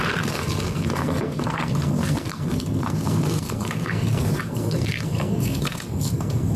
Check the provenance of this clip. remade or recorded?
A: remade